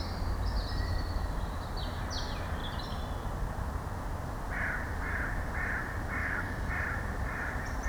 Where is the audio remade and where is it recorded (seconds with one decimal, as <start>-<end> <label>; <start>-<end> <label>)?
0.0-6.2 recorded; 6.2-6.7 remade; 6.7-7.9 recorded